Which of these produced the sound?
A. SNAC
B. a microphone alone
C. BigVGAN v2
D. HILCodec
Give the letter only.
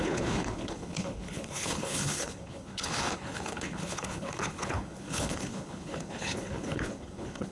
D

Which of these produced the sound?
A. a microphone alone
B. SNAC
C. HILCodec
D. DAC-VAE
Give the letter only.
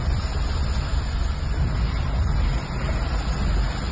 A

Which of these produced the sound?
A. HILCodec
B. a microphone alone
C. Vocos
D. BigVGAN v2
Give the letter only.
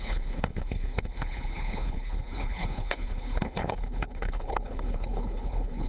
A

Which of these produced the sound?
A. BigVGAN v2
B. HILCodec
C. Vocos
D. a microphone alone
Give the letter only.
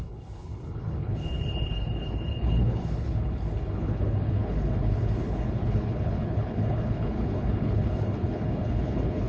B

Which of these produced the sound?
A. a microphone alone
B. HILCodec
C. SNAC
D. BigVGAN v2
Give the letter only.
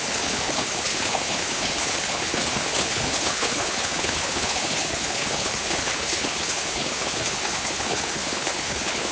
B